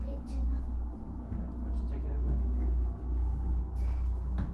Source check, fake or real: real